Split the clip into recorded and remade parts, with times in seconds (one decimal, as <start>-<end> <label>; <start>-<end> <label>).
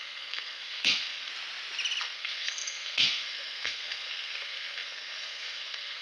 0.0-1.3 remade; 1.3-2.0 recorded; 2.0-6.0 remade